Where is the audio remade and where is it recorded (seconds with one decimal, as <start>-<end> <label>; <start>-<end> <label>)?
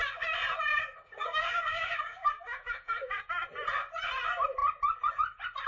0.0-0.7 recorded; 0.7-3.2 remade; 3.2-5.7 recorded